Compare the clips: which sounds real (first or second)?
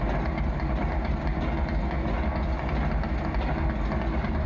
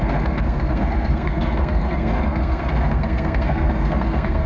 first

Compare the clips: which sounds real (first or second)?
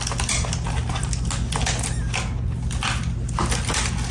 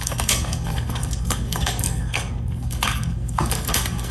first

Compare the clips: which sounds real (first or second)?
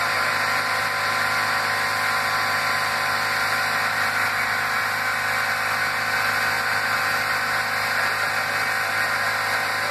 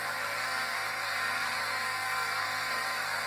first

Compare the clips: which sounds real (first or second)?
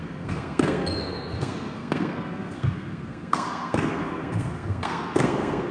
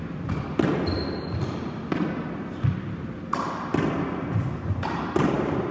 second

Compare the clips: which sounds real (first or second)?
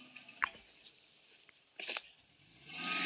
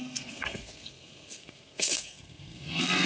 first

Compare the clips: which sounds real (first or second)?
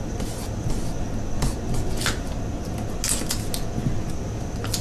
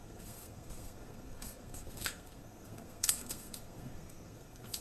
first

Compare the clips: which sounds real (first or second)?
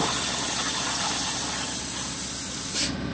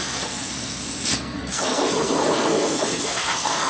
first